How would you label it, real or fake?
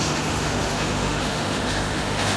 fake